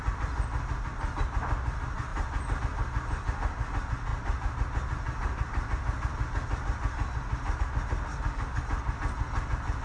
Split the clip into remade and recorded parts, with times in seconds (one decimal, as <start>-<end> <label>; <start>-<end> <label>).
0.0-8.1 recorded; 8.1-8.6 remade; 8.6-9.8 recorded